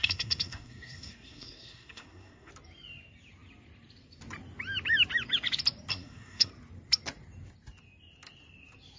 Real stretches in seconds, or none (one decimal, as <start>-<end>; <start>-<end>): 2.5-5.9; 6.5-9.0